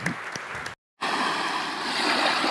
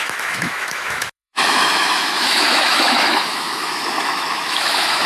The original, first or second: first